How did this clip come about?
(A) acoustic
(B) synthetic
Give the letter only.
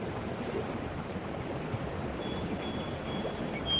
A